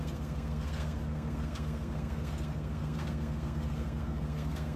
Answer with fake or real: fake